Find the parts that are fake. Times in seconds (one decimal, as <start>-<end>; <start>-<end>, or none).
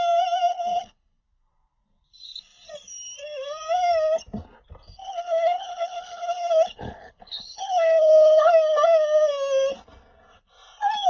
0.5-1.2; 5.0-8.5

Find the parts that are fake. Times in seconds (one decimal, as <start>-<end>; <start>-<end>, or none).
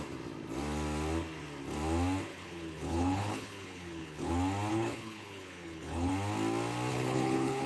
2.3-4.3; 4.7-6.1; 6.9-7.7